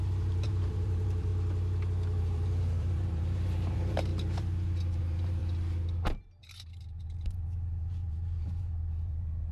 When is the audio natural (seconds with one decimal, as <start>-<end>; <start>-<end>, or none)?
1.3-2.2; 5.4-6.2